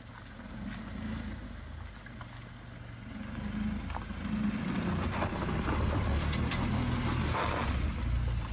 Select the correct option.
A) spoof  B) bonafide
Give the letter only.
B